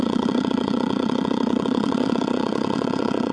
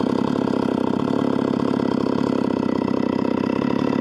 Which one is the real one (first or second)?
second